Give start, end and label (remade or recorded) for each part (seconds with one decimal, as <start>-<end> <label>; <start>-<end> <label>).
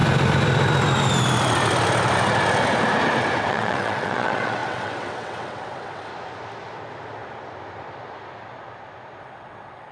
0.0-3.5 recorded; 3.5-6.1 remade; 6.1-9.2 recorded; 9.2-9.9 remade